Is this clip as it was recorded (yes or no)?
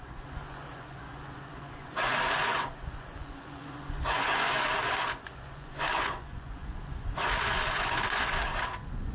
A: no